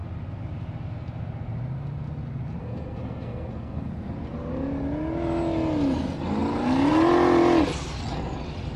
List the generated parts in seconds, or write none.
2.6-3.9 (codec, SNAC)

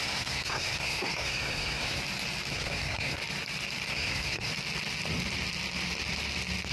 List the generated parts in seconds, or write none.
0.0-2.0 (codec, SNAC); 2.5-3.2; 3.9-4.5

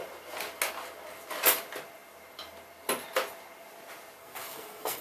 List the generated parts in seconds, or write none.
4.2-5.0 (codec, SNAC)

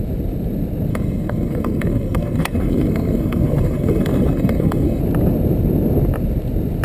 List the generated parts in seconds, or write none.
0.9-5.0 (codec, SNAC)

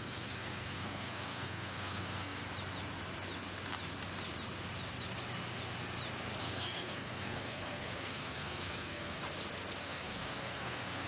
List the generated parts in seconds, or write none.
0.0-2.4 (codec, SNAC); 6.4-9.2; 9.8-11.1

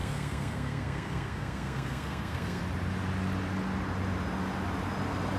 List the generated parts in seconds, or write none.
0.0-2.6 (codec, SNAC)